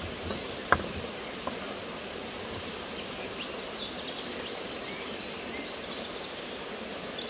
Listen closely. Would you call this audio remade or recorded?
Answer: recorded